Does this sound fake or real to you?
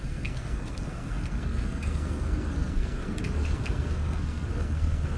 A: fake